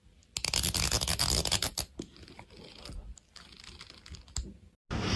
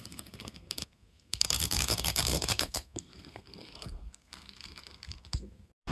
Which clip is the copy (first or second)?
second